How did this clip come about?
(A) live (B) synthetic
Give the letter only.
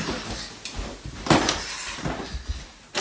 A